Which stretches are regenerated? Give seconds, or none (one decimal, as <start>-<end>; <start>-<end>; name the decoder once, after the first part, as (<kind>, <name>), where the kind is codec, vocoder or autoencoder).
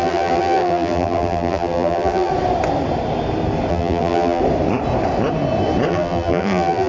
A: 0.0-2.3 (vocoder, BigVGAN v2); 3.7-4.4; 5.9-6.9